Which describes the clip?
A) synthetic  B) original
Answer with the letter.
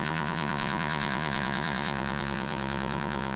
A